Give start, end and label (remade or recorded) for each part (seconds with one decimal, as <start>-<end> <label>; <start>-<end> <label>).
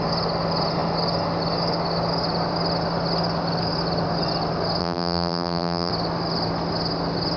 0.0-4.8 recorded; 4.8-5.9 remade; 5.9-7.4 recorded